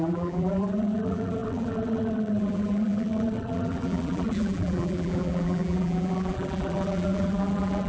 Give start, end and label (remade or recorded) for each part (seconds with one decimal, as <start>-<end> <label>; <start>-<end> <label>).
0.0-7.9 remade